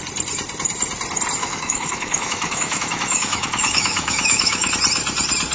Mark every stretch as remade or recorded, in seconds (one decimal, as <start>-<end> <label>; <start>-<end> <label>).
0.0-1.4 recorded; 1.4-4.7 remade; 4.7-5.5 recorded